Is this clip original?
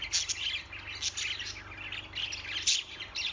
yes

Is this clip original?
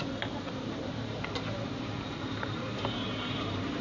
no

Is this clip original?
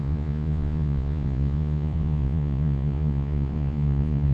no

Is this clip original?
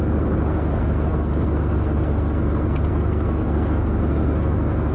no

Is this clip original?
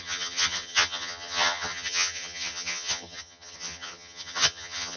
no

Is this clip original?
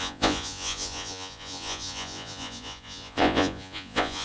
no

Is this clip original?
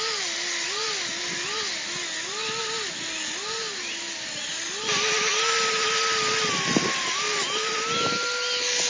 yes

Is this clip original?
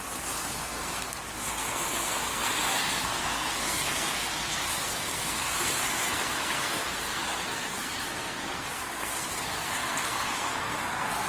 no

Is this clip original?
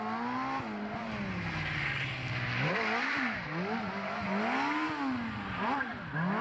yes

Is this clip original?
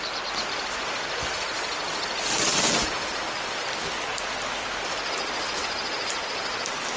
yes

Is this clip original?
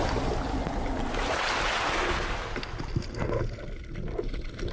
yes